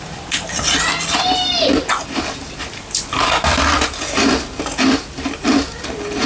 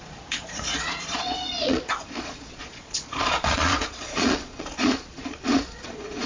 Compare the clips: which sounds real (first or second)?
first